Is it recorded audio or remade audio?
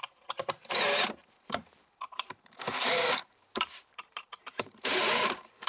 remade